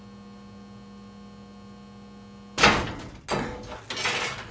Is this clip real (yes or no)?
yes